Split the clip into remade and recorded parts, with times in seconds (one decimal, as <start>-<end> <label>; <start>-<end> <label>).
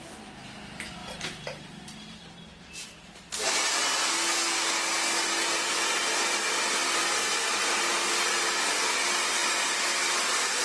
0.0-1.0 recorded; 1.0-3.5 remade; 3.5-7.0 recorded; 7.0-7.6 remade; 7.6-10.6 recorded